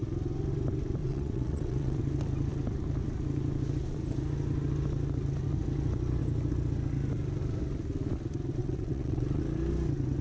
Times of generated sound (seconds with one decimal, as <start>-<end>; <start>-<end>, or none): 1.0-2.0; 8.6-9.4